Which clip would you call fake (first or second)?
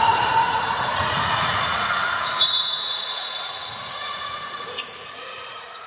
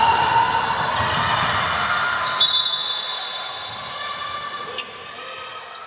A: first